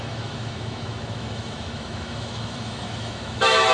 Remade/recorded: remade